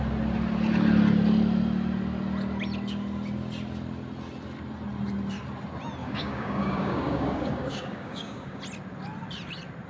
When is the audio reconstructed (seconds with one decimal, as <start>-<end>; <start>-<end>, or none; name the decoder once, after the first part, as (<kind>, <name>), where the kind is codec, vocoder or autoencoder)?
6.0-8.6 (codec, DAC)